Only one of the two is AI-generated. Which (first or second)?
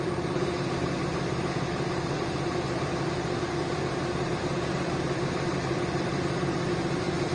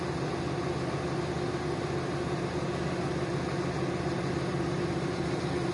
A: first